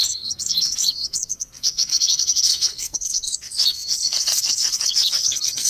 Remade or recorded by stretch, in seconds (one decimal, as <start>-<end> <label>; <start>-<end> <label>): 0.0-5.7 remade